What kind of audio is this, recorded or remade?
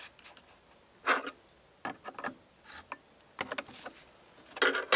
recorded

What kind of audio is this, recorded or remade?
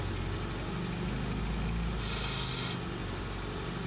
recorded